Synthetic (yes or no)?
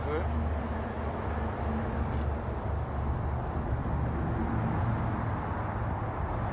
no